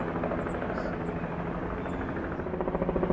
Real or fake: real